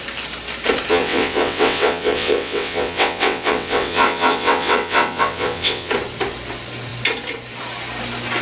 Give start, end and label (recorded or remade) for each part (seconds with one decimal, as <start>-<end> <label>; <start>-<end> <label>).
0.0-0.9 recorded; 0.9-5.9 remade; 5.9-8.4 recorded